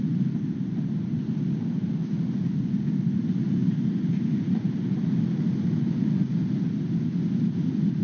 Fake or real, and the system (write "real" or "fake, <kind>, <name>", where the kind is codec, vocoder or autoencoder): real